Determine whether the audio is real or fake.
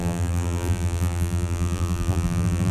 fake